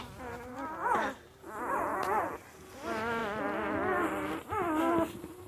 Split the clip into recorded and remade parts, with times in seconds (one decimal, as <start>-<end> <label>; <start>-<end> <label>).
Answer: 0.0-5.5 recorded